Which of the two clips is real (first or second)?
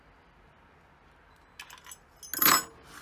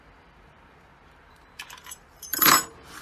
first